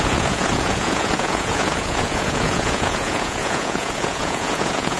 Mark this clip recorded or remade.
remade